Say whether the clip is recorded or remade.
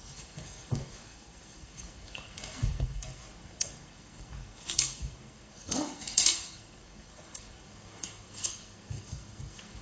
remade